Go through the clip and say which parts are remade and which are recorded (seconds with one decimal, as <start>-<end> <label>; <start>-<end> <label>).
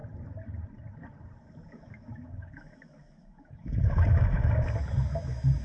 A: 0.0-1.7 recorded; 1.7-5.6 remade